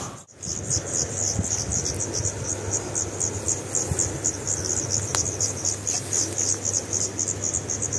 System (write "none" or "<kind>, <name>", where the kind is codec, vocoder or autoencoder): none